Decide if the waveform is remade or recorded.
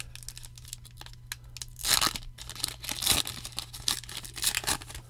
recorded